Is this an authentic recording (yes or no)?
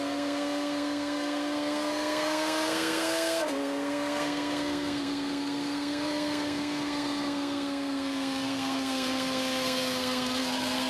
no